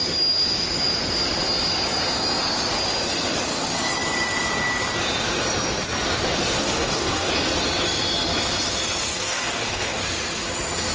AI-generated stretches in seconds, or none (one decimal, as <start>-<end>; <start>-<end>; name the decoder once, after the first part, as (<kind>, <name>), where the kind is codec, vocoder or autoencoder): 6.6-7.3 (codec, DAC); 9.1-10.0